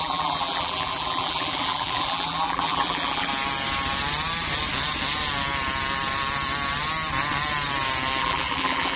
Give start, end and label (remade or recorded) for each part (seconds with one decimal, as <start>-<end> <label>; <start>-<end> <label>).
0.0-3.3 remade; 3.3-8.2 recorded; 8.2-9.0 remade